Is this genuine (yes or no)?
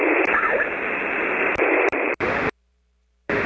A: no